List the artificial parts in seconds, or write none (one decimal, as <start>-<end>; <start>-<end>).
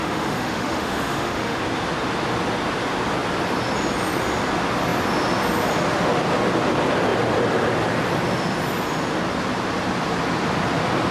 0.0-1.6